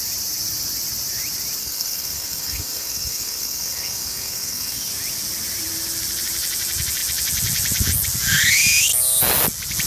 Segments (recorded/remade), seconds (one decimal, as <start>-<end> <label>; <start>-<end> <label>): 0.0-1.6 recorded; 1.6-4.9 remade; 4.9-9.9 recorded